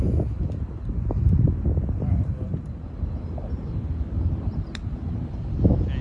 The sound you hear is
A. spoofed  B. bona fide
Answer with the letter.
B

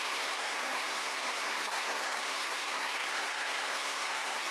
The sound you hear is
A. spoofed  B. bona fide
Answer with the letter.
A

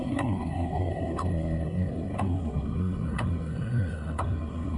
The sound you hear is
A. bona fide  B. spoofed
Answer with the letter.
B